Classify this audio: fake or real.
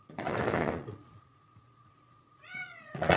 fake